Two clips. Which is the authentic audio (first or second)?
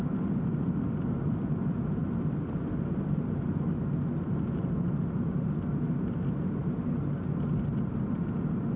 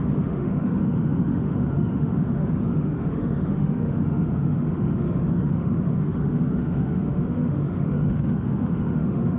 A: first